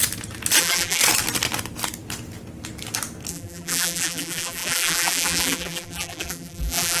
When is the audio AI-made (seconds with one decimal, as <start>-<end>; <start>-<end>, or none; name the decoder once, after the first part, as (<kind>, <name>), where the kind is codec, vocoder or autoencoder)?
0.6-1.0 (vocoder, BigVGAN v2); 3.3-7.0